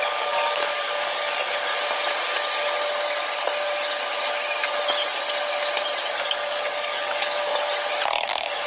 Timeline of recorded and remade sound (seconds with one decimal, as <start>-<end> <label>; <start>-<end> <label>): 0.0-1.7 remade; 1.7-6.1 recorded; 6.1-7.5 remade; 7.5-8.1 recorded; 8.1-8.7 remade